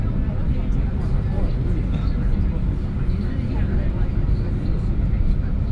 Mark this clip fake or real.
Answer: real